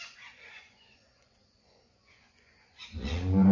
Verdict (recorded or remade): remade